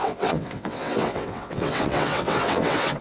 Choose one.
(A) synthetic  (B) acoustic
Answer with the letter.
A